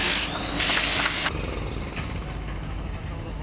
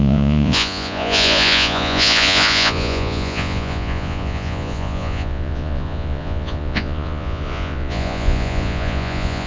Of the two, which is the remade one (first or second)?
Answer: second